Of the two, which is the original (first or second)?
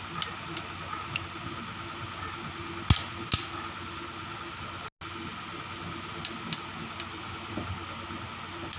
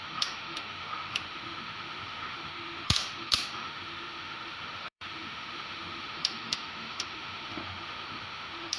first